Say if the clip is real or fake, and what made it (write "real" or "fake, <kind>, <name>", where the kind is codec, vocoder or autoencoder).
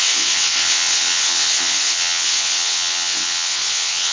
fake, vocoder, WaveNeXt